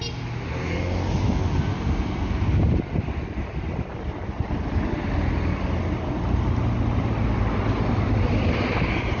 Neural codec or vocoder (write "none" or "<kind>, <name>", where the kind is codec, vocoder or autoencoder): none